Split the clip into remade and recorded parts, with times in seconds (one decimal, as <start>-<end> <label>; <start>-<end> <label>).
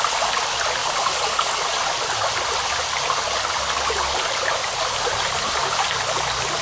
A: 0.0-4.6 recorded; 4.6-5.6 remade; 5.6-6.6 recorded